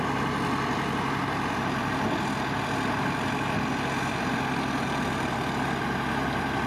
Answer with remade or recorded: recorded